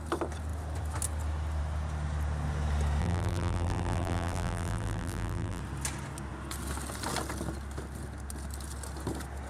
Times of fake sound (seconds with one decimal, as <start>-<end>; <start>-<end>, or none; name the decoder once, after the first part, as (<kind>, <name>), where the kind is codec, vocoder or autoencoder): 3.0-5.6 (vocoder, BigVGAN v2)